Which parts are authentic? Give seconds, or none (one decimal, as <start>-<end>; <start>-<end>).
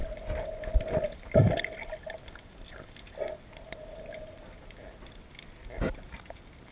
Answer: 0.0-6.7